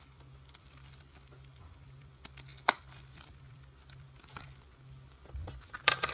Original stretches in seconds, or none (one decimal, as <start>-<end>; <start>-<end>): none